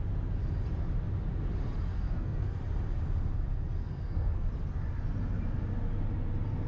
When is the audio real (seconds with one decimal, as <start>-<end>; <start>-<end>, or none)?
0.0-1.9; 2.6-3.8; 4.5-6.7